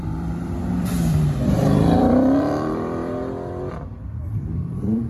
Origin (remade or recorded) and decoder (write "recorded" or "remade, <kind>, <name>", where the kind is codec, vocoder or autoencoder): remade, vocoder, BigVGAN v2